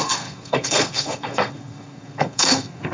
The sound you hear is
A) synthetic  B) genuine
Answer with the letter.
A